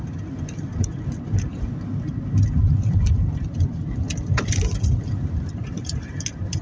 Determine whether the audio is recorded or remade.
recorded